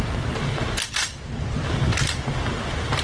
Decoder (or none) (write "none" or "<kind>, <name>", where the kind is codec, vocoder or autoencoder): none